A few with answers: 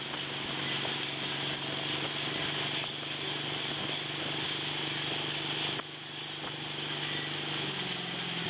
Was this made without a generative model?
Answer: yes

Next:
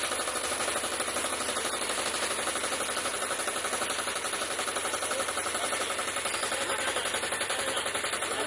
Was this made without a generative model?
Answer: no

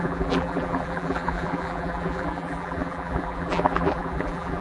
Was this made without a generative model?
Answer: no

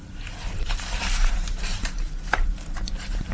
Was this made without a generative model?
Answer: no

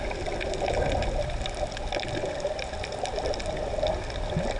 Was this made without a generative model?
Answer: yes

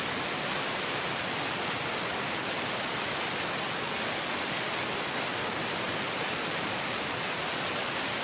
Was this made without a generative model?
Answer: yes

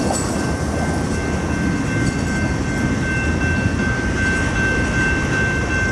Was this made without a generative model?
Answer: yes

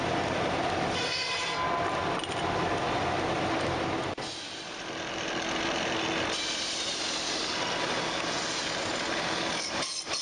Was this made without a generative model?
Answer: yes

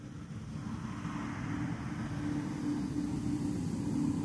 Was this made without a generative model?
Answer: yes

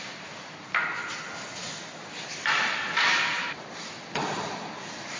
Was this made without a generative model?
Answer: yes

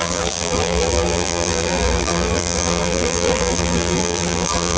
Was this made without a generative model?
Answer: no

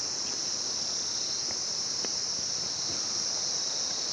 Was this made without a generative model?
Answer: yes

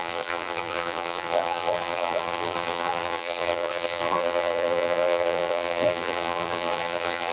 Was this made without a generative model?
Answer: no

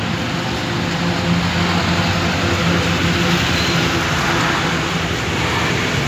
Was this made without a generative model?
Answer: yes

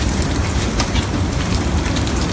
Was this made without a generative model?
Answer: no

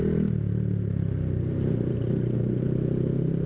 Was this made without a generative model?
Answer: yes